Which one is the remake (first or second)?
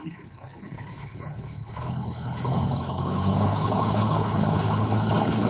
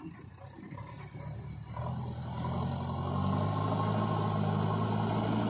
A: first